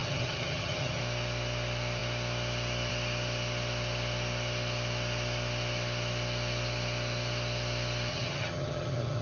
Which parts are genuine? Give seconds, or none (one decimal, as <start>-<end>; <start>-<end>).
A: 1.0-8.1